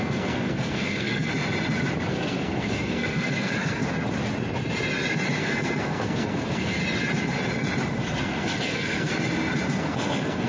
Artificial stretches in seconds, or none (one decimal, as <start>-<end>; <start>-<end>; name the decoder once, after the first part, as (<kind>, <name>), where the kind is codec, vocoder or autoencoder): 0.0-1.3 (codec, SNAC); 2.1-3.8; 5.4-6.8; 8.2-9.1; 9.8-10.5